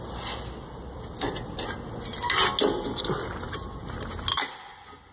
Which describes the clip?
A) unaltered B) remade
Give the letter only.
A